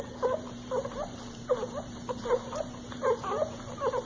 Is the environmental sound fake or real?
fake